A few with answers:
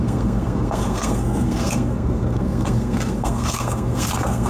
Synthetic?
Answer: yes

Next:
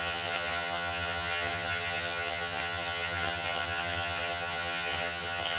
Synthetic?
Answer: yes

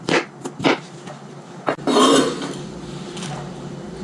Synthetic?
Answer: no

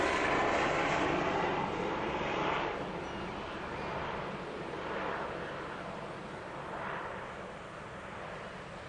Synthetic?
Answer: no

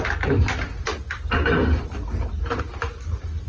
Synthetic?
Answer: no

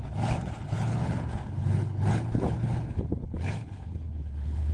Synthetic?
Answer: yes